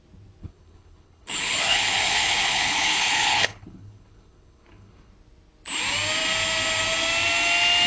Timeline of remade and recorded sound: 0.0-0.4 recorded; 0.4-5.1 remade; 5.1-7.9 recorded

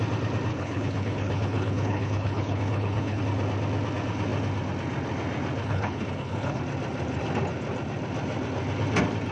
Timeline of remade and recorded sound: 0.0-0.5 recorded; 0.5-3.2 remade; 3.2-5.6 recorded; 5.6-6.6 remade; 6.6-9.3 recorded